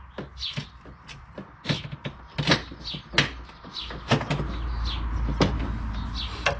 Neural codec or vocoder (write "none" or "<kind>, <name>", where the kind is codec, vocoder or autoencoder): none